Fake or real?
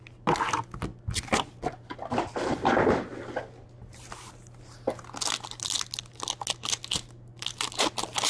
real